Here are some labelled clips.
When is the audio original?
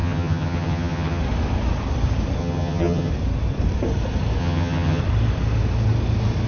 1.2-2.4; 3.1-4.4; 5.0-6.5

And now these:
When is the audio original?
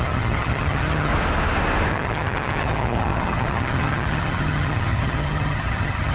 1.1-1.9